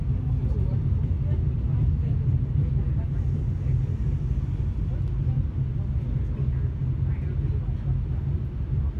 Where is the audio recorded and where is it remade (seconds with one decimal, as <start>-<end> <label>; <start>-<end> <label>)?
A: 0.0-9.0 recorded